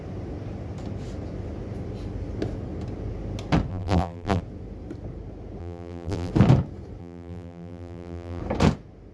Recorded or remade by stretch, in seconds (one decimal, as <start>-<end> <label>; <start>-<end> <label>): 0.0-3.7 recorded; 3.7-4.4 remade; 4.4-5.6 recorded; 5.6-6.3 remade; 6.3-7.0 recorded; 7.0-8.4 remade; 8.4-9.1 recorded